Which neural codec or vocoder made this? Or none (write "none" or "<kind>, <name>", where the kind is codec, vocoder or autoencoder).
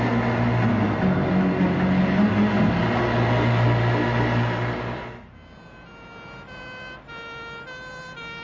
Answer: none